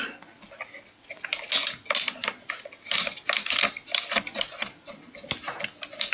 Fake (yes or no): no